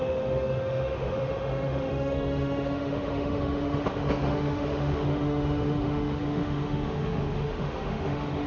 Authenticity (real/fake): fake